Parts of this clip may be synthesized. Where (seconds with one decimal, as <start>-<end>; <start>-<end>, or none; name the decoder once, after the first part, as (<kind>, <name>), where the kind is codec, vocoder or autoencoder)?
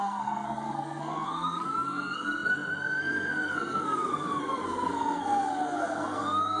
0.0-6.6 (codec, SNAC)